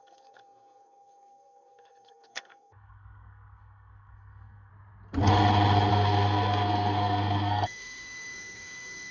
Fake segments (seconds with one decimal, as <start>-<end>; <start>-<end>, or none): 0.0-4.7; 5.9-9.1